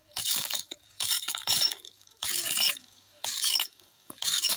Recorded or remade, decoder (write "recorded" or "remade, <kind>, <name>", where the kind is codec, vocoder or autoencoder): remade, codec, DAC